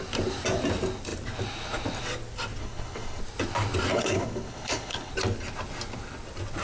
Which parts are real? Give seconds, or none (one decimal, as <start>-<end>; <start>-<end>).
0.0-2.6; 3.2-3.9; 5.1-6.6